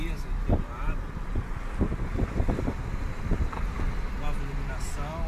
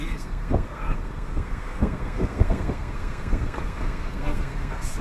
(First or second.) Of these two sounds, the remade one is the second